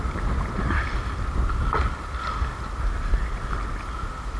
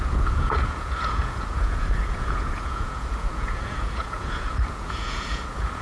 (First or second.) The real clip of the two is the first